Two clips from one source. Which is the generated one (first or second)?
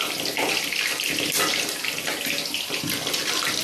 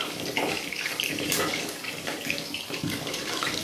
second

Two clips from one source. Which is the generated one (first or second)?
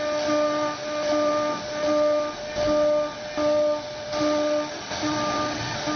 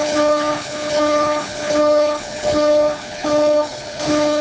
second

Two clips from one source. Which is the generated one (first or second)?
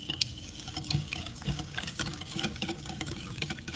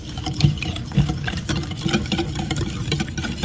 first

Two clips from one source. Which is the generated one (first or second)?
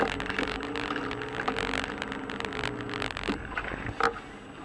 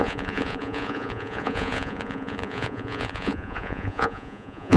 second